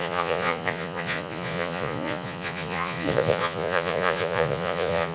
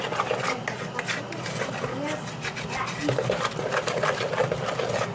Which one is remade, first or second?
first